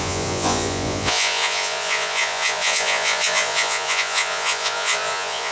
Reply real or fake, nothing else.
fake